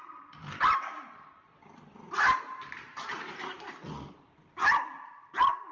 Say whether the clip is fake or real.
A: real